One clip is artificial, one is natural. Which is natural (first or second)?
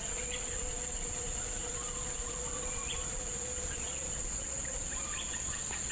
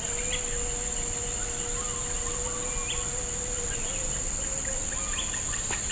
second